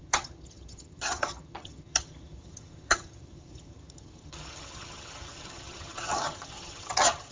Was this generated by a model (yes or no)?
yes